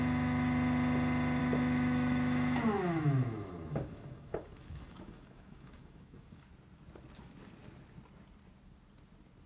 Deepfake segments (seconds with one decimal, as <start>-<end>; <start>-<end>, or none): 1.4-6.5